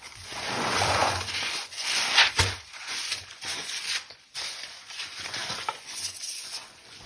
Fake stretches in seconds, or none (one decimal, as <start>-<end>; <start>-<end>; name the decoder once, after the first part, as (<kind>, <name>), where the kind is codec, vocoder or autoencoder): 0.0-7.1 (vocoder, Vocos)